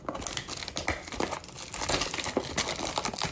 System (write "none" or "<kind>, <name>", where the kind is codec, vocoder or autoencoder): none